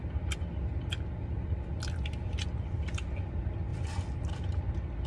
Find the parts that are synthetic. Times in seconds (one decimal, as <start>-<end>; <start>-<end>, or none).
none